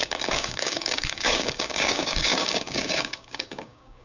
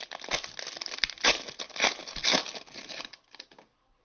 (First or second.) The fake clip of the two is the first